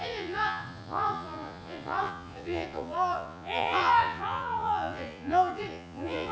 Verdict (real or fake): fake